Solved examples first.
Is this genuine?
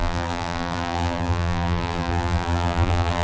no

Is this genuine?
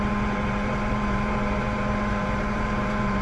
no